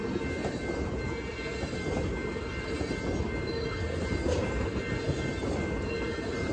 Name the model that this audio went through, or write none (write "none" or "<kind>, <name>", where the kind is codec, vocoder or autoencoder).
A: none